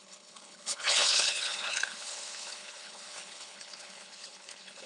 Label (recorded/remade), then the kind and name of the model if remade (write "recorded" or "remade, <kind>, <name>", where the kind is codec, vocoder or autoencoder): remade, codec, HILCodec